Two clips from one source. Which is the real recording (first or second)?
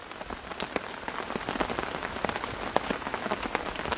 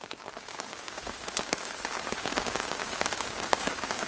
first